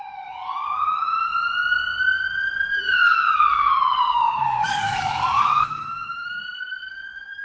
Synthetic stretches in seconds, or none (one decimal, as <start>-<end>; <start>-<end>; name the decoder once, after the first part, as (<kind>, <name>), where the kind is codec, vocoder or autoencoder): 0.0-1.3 (codec, DAC); 2.7-7.4